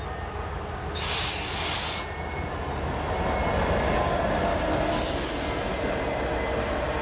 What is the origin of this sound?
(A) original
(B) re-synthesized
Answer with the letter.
A